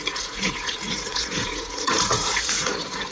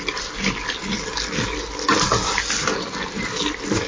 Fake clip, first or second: first